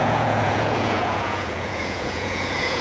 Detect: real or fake fake